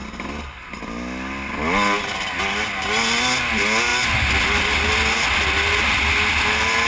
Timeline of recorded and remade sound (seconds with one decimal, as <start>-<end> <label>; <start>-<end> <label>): 0.0-6.9 recorded